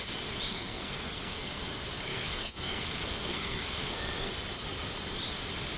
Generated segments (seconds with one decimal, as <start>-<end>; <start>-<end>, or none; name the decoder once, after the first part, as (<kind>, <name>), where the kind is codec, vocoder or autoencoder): 0.5-1.6 (codec, SNAC); 2.1-4.3